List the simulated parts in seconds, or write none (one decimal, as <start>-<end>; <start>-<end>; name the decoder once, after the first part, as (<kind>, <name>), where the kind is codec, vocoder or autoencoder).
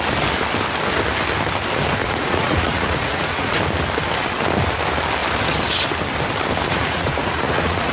2.0-3.5 (vocoder, Vocos); 6.6-7.9